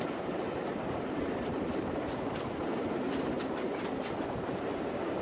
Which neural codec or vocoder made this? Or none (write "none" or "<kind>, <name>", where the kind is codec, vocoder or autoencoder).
vocoder, BigVGAN v2